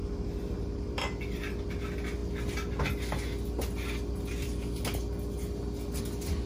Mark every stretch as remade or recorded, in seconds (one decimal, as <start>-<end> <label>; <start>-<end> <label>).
0.0-6.5 recorded